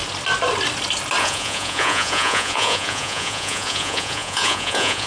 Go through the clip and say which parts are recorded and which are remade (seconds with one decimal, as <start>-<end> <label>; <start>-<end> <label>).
0.0-1.2 recorded; 1.2-5.1 remade